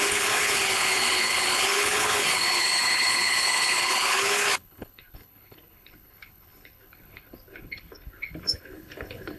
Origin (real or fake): fake